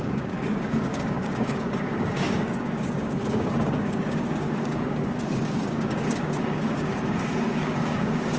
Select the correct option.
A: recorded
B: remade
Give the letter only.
B